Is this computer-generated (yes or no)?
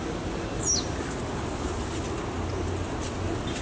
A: no